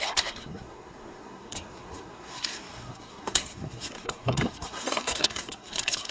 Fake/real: fake